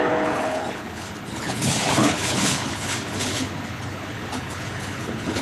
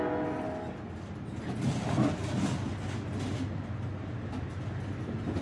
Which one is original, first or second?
second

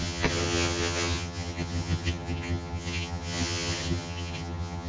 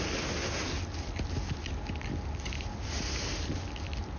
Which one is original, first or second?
second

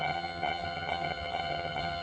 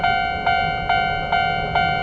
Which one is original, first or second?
second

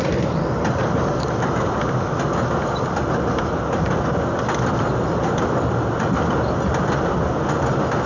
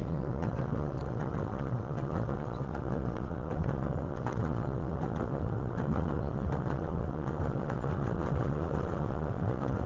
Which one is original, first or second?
first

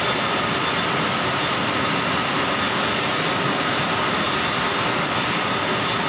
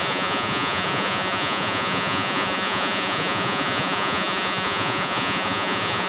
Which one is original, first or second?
first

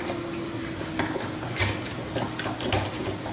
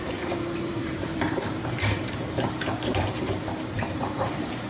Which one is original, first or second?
first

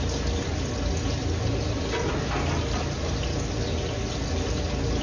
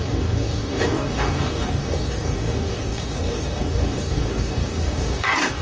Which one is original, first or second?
first